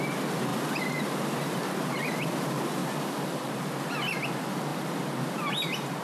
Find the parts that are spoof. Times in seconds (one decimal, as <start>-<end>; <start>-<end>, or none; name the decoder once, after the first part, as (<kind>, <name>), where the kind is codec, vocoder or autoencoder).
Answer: 0.5-1.7 (vocoder, BigVGAN v2); 2.8-3.6; 4.7-6.0